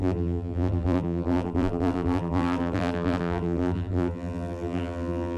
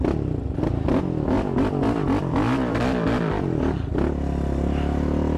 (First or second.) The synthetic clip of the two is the first